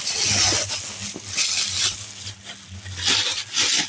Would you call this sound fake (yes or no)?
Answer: no